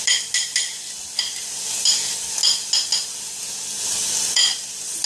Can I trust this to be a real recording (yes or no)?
yes